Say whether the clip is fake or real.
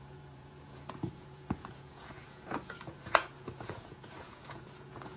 fake